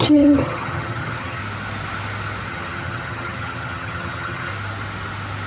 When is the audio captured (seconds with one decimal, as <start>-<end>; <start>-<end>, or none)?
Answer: 1.4-2.5; 4.5-5.5